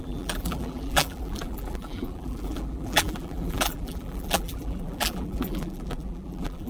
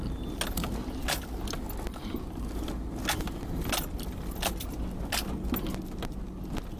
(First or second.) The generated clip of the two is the first